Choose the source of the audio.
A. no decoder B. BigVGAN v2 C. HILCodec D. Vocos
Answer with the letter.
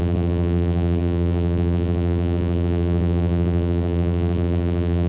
B